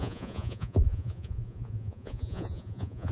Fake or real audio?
fake